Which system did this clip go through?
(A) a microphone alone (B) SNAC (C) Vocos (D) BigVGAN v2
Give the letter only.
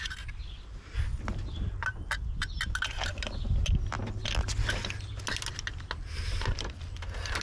A